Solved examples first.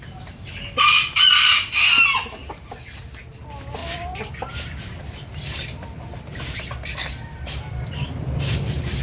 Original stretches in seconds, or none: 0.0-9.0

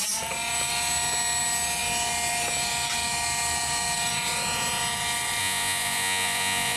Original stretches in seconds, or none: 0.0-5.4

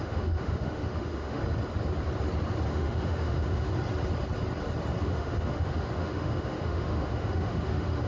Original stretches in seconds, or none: 1.4-2.7; 3.7-5.0